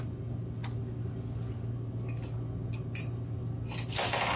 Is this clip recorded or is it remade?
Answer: recorded